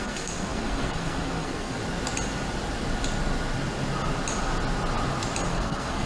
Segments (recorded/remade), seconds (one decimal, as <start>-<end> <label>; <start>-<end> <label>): 0.0-1.8 remade; 1.8-5.5 recorded; 5.5-6.1 remade